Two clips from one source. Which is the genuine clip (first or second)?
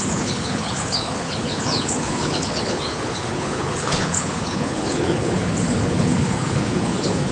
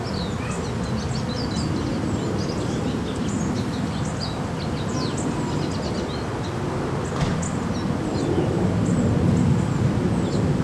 second